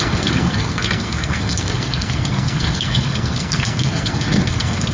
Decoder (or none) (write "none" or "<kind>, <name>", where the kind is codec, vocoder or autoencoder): codec, SNAC